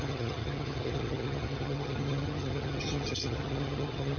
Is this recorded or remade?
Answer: remade